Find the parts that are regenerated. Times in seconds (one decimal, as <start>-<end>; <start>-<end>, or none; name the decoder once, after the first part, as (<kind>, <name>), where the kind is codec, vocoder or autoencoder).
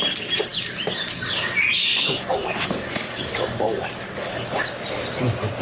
1.9-3.9 (codec, DAC)